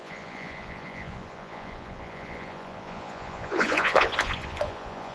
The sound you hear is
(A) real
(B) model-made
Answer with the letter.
B